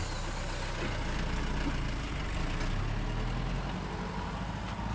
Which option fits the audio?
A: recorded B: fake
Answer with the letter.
A